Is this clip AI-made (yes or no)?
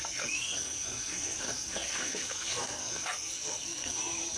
yes